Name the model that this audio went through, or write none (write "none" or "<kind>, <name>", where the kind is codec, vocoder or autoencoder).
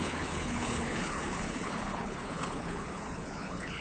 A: codec, HILCodec